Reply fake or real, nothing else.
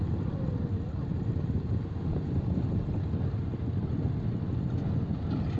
real